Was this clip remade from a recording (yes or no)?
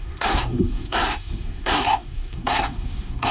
yes